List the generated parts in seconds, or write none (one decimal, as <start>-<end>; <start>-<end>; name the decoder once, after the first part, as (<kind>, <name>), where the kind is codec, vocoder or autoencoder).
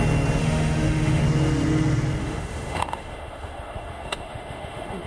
0.4-1.2 (autoencoder, DAC-VAE); 2.2-5.1